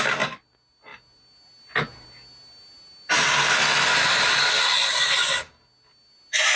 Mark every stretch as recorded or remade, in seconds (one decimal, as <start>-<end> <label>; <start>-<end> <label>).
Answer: 0.0-6.6 recorded